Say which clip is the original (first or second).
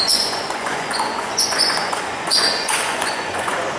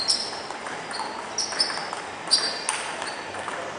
second